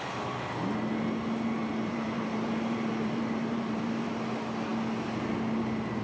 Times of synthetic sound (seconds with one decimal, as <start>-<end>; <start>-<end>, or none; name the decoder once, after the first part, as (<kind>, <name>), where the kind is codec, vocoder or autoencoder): 1.6-4.1 (vocoder, BigVGAN v2)